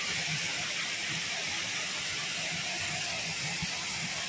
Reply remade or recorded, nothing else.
recorded